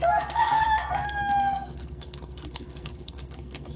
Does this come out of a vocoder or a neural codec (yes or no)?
yes